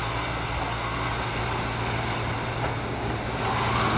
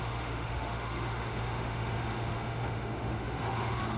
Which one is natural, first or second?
first